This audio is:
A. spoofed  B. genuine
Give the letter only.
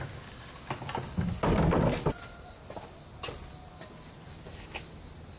B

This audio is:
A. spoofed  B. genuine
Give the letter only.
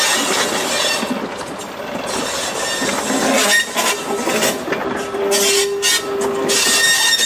B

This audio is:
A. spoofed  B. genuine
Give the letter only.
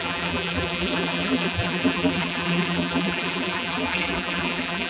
A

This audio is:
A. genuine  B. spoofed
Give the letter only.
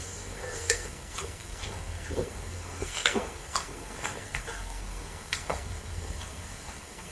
B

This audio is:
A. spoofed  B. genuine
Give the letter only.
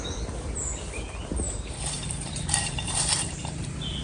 A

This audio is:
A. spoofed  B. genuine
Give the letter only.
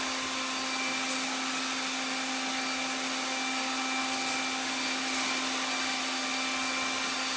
B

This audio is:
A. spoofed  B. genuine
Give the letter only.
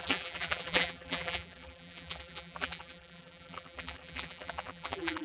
A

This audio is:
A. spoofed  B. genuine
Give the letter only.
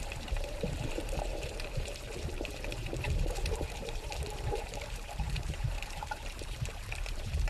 A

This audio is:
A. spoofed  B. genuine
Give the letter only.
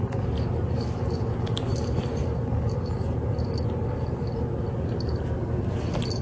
B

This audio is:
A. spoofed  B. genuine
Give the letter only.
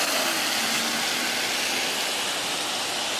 B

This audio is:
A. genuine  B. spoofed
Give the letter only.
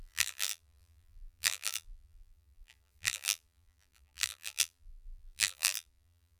B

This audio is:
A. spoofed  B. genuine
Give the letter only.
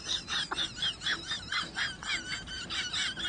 B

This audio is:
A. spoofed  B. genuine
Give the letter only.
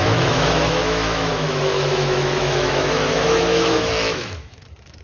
A